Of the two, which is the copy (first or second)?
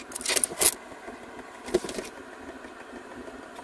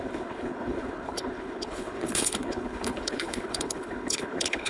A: second